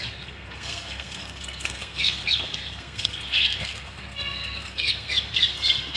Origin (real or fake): fake